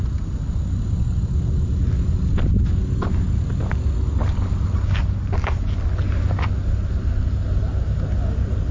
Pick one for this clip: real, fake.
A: real